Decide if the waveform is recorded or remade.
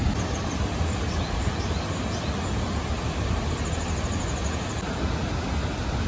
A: recorded